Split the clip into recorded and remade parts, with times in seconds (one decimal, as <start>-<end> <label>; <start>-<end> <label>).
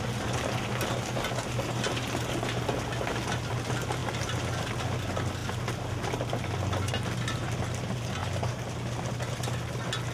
0.0-10.1 recorded